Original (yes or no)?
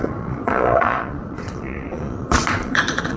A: no